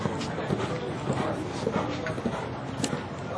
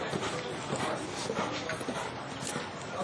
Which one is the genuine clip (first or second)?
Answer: first